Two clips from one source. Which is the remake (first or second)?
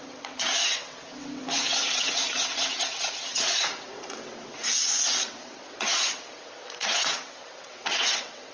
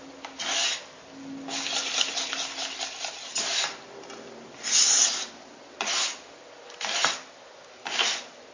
first